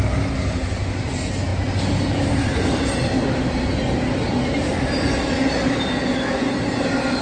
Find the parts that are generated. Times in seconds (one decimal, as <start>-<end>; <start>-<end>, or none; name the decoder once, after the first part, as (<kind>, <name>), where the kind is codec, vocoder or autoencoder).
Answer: none